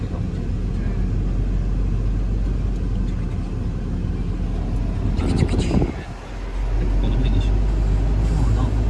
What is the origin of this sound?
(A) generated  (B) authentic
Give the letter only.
B